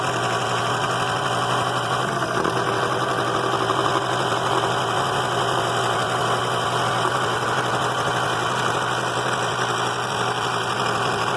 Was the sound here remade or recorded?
recorded